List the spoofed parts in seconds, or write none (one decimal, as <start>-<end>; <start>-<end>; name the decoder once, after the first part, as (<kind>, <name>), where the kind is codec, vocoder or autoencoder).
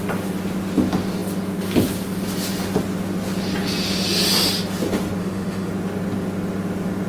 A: 5.2-5.7 (autoencoder, DAC-VAE)